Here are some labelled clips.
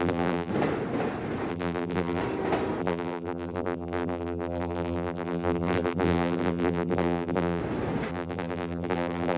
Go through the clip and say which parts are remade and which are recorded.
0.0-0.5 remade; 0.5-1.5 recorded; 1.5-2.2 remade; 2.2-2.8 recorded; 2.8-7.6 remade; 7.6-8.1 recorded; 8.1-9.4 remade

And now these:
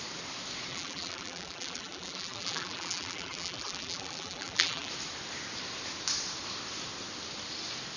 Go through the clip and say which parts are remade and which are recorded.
0.0-0.7 recorded; 0.7-4.9 remade; 4.9-8.0 recorded